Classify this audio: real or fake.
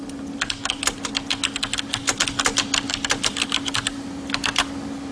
real